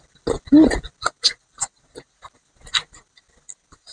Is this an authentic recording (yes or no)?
yes